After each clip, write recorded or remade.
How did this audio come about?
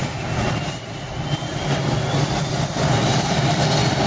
recorded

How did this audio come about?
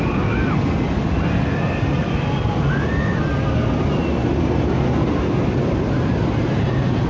recorded